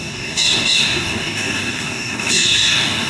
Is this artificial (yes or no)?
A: yes